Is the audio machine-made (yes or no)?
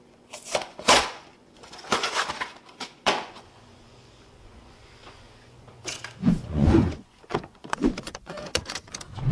yes